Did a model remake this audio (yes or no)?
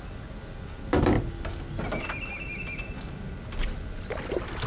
no